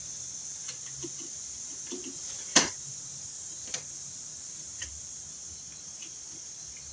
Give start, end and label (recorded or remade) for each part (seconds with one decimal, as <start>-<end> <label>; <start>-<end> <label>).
0.0-6.9 remade